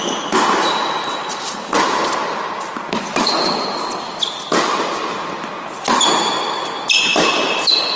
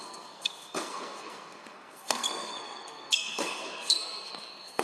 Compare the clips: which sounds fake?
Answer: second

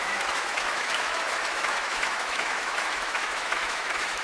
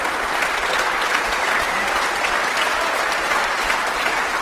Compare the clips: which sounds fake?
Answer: first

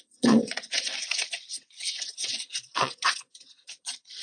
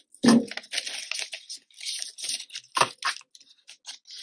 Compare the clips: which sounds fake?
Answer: first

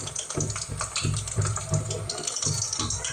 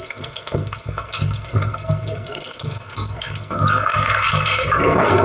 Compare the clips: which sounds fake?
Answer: second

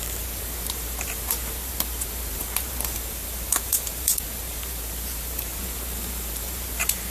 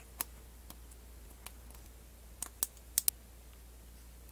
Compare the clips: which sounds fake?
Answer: first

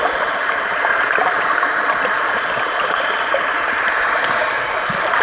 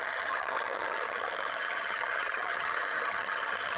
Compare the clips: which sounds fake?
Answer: second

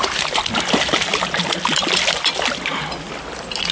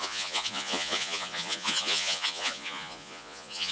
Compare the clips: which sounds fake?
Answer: second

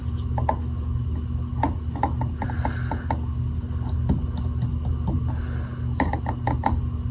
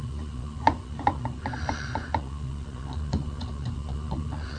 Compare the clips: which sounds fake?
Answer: second